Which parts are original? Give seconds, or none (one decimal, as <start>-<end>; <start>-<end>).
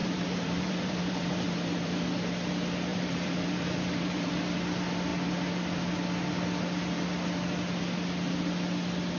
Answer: 2.0-2.9; 4.3-9.2